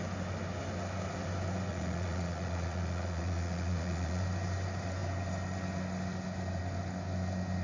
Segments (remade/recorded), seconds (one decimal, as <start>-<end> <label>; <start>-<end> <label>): 0.0-1.7 recorded; 1.7-4.2 remade; 4.2-7.6 recorded